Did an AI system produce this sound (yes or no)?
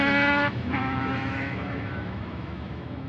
yes